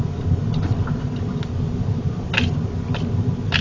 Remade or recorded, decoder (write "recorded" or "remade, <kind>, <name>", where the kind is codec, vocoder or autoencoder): recorded